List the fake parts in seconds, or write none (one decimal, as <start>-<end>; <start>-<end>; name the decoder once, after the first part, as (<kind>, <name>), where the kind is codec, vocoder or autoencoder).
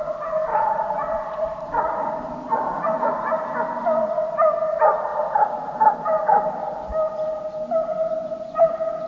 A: 0.5-2.1 (vocoder, Vocos)